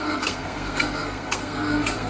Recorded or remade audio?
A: remade